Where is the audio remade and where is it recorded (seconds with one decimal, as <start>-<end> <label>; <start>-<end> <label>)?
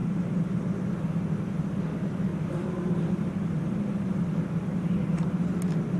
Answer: 0.0-0.9 remade; 0.9-2.3 recorded; 2.3-4.2 remade; 4.2-6.0 recorded